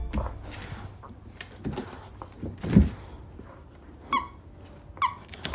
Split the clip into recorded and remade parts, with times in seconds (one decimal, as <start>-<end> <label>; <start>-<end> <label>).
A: 0.0-5.5 recorded